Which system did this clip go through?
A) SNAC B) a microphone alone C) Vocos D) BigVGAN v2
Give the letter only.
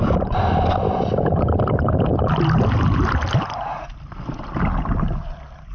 B